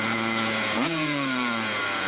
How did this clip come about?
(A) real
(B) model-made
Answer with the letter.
B